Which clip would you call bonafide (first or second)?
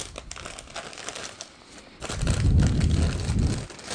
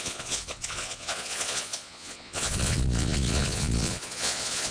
first